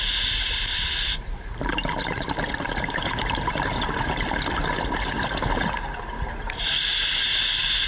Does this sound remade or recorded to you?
recorded